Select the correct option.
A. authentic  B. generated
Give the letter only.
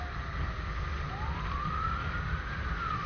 A